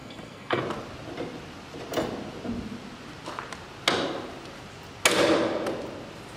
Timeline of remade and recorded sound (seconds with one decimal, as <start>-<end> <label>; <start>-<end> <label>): 0.0-0.6 remade; 0.6-6.4 recorded